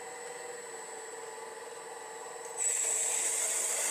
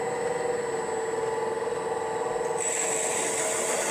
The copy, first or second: first